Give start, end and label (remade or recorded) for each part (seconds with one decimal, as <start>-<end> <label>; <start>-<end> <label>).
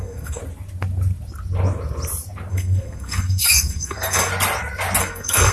0.0-0.4 remade; 0.4-2.5 recorded; 2.5-4.3 remade; 4.3-5.0 recorded; 5.0-5.5 remade